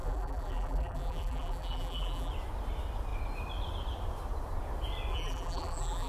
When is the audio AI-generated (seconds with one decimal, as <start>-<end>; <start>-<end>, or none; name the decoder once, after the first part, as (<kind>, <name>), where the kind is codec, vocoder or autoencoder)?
0.0-2.3 (vocoder, BigVGAN v2); 5.1-6.1